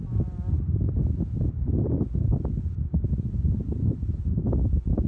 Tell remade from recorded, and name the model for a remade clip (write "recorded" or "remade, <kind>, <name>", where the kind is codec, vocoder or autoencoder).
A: recorded